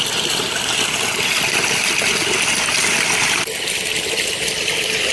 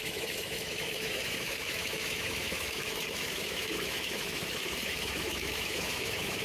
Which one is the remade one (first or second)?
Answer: second